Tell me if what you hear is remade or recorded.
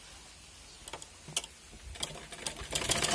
recorded